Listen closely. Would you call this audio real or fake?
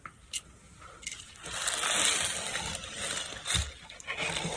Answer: real